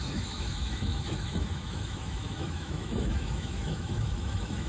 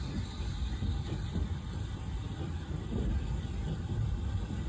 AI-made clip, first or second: first